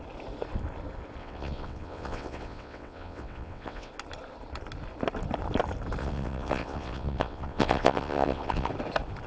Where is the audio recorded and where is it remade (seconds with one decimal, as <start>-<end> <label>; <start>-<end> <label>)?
0.0-1.2 recorded; 1.2-3.9 remade; 3.9-6.0 recorded; 6.0-8.7 remade; 8.7-9.3 recorded